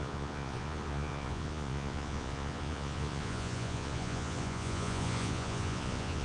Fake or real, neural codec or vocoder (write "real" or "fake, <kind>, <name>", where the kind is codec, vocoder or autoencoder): fake, vocoder, Vocos